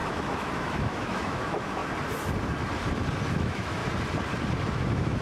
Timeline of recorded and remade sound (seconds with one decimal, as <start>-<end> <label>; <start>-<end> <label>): 0.0-1.8 remade; 1.8-3.3 recorded; 3.3-3.8 remade; 3.8-4.7 recorded; 4.7-5.2 remade